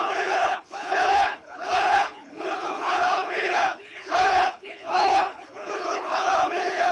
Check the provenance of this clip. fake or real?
fake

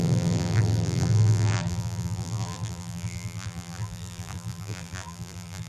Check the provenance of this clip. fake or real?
fake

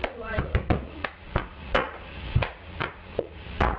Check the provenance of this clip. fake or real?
fake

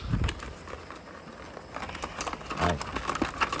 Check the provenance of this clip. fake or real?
real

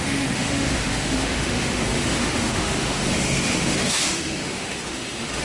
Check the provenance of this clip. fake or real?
fake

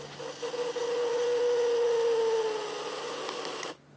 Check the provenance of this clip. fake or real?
real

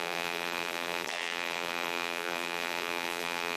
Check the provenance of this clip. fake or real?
fake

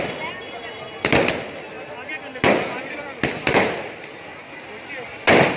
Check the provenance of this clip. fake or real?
real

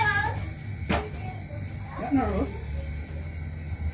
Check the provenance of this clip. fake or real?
real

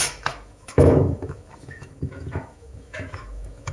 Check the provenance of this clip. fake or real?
fake